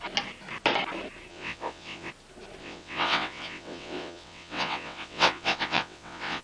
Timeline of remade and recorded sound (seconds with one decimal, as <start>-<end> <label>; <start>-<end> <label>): 0.0-1.3 recorded; 1.3-2.1 remade; 2.1-2.6 recorded; 2.6-6.4 remade